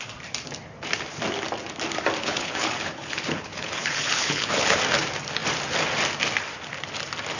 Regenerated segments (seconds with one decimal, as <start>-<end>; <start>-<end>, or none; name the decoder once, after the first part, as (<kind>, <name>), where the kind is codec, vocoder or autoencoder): 2.2-4.8 (codec, HILCodec)